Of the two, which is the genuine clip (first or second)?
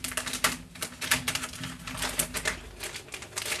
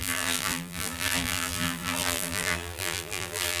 first